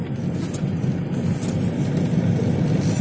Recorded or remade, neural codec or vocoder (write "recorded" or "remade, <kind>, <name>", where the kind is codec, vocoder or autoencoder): recorded